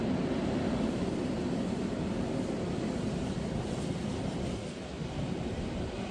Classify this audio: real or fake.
real